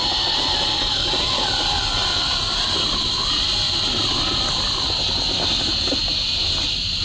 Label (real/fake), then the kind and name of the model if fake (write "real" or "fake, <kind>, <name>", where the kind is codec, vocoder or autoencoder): real